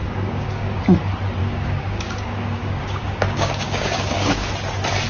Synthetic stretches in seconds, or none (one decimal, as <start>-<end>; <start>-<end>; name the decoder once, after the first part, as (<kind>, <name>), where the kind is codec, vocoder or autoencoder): 0.0-0.8 (codec, DAC); 1.4-4.5